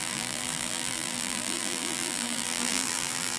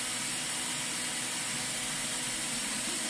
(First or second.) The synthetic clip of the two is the first